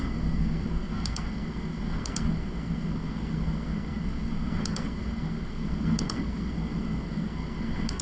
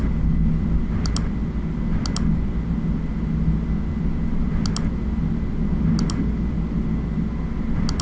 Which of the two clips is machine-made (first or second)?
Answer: first